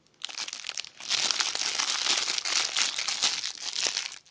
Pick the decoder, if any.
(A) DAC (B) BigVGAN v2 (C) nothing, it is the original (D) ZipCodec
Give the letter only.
C